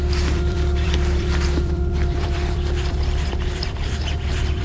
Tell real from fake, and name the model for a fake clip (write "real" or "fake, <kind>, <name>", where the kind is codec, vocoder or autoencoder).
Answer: fake, vocoder, BigVGAN v2